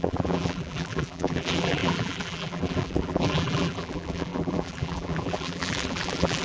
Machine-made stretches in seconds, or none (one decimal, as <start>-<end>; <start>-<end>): 0.0-6.4